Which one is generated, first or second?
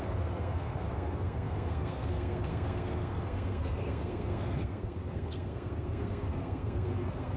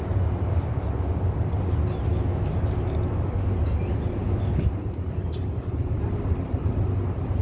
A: first